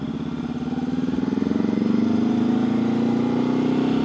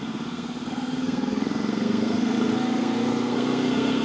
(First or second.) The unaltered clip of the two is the first